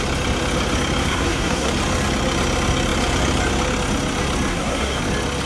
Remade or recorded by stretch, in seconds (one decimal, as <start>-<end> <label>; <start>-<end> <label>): 0.0-1.0 recorded; 1.0-1.7 remade; 1.7-4.5 recorded; 4.5-5.0 remade; 5.0-5.5 recorded

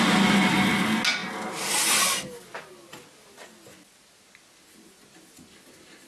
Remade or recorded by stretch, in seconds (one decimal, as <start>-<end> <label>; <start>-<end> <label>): 0.0-6.1 recorded

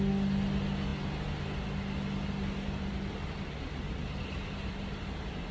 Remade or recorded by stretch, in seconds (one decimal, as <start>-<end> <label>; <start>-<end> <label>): 0.0-5.5 recorded

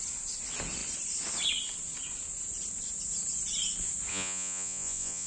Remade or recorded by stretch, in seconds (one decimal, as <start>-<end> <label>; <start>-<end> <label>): 0.0-4.1 recorded; 4.1-5.3 remade

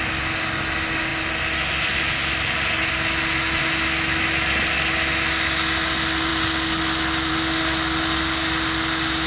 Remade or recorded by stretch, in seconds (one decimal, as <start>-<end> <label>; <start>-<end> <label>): 0.0-9.3 recorded